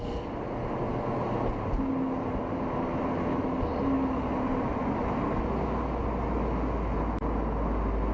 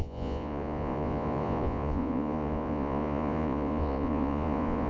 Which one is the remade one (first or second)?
second